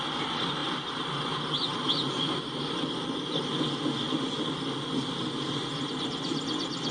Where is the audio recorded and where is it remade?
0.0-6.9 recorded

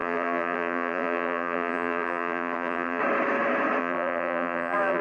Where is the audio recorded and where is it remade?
0.0-3.0 remade; 3.0-3.8 recorded; 3.8-5.0 remade

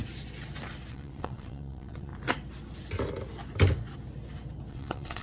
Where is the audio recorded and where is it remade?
0.0-0.9 recorded; 0.9-2.1 remade; 2.1-4.7 recorded; 4.7-5.2 remade

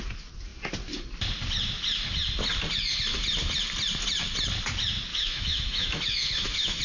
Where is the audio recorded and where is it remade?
0.0-5.1 recorded; 5.1-6.8 remade